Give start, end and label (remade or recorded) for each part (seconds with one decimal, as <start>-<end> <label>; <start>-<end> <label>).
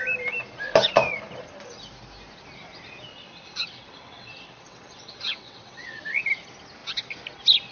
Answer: 0.0-3.1 recorded; 3.1-6.0 remade; 6.0-7.7 recorded